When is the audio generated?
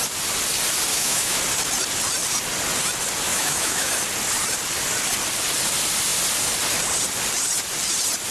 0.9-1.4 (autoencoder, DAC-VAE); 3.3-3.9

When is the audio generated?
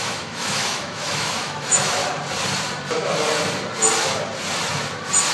0.0-2.0 (autoencoder, DAC-VAE)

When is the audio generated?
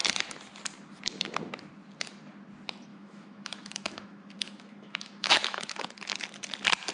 2.9-5.9 (autoencoder, DAC-VAE)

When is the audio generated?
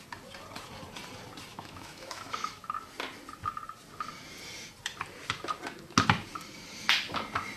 1.5-2.6 (autoencoder, DAC-VAE)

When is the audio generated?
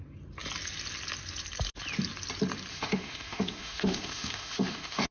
2.7-5.1 (autoencoder, DAC-VAE)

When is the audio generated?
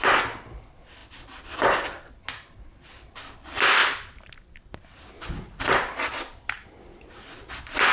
none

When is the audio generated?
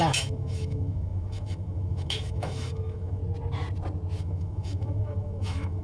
0.0-3.2 (autoencoder, DAC-VAE); 4.2-5.8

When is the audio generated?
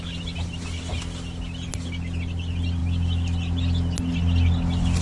none